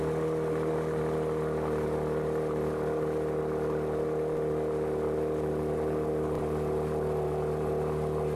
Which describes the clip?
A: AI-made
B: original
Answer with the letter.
B